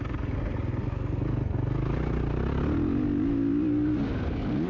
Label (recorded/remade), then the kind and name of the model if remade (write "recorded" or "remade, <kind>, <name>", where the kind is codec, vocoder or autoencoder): recorded